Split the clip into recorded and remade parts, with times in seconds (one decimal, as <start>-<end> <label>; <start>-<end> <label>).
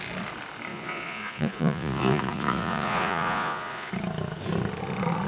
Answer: 0.0-0.7 recorded; 0.7-3.9 remade; 3.9-5.3 recorded